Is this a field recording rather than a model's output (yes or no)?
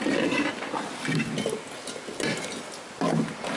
yes